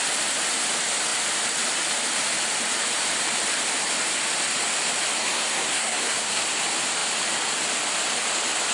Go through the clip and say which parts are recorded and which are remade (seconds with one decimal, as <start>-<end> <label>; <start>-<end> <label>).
0.0-5.2 recorded; 5.2-6.4 remade; 6.4-8.7 recorded